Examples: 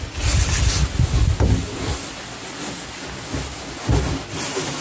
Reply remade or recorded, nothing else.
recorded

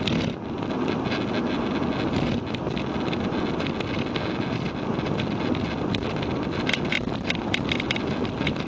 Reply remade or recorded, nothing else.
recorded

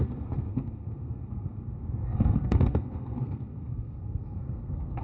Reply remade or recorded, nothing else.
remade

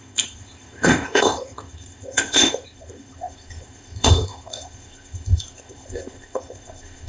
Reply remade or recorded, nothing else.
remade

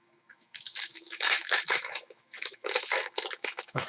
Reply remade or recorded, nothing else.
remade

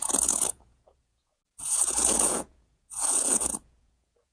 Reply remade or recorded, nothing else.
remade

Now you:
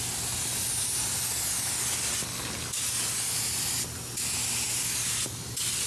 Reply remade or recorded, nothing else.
recorded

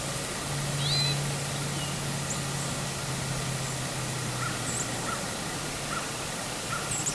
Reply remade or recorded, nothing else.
recorded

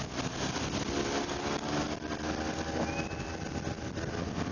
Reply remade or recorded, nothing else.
recorded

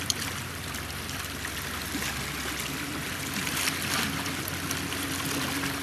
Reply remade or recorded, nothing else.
recorded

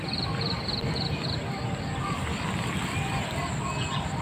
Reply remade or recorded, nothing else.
recorded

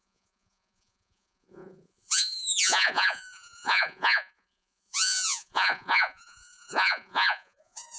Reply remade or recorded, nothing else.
remade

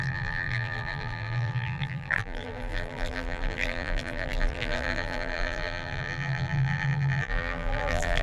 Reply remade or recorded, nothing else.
remade